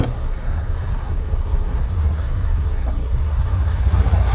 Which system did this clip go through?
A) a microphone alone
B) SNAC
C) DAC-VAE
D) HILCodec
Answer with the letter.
B